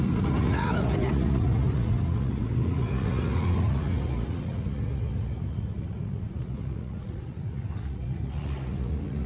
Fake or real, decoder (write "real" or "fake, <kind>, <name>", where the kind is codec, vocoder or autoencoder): fake, vocoder, Vocos